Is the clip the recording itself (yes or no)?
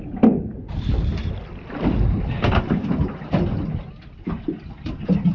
yes